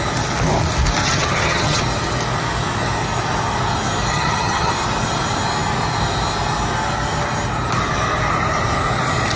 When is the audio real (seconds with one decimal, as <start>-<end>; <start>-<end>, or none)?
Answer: 0.0-1.0; 1.8-4.1; 4.7-9.4